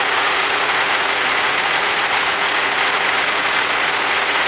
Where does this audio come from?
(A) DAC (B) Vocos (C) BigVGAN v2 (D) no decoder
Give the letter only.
B